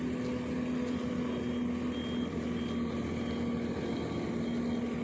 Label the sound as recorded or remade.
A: recorded